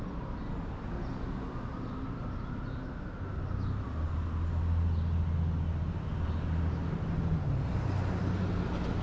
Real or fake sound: real